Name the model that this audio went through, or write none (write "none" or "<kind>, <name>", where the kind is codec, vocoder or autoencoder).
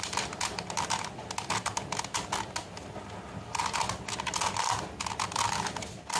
none